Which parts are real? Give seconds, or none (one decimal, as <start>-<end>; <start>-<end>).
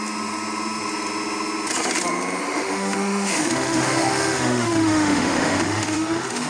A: 0.0-2.4